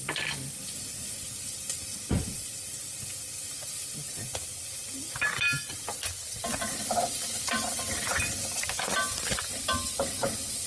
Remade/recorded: recorded